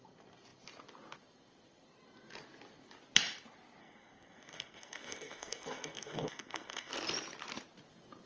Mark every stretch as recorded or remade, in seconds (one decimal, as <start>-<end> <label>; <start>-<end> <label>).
0.0-3.8 recorded; 3.8-6.9 remade; 6.9-8.3 recorded